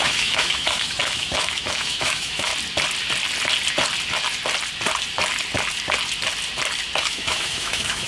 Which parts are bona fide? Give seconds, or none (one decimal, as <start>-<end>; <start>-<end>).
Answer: 2.5-7.0